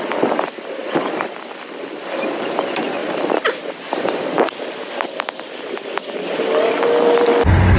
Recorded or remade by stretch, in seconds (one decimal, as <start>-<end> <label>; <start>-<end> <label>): 0.0-3.0 recorded; 3.0-5.6 remade; 5.6-7.8 recorded